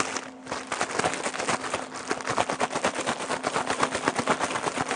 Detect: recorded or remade recorded